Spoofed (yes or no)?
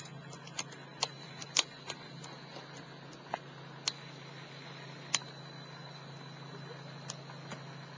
no